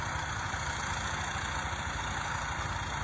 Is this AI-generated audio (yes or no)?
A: no